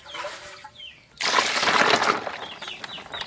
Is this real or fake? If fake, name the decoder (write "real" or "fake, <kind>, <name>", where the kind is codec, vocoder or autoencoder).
real